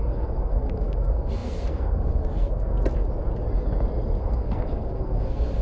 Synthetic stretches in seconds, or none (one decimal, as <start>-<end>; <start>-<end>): 0.0-2.7; 4.2-5.6